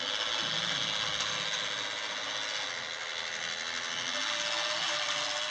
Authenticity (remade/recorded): recorded